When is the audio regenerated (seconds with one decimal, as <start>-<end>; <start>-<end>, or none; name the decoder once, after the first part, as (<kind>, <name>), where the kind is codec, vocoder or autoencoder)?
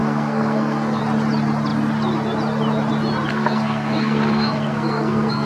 0.0-1.0 (codec, SNAC); 3.3-5.5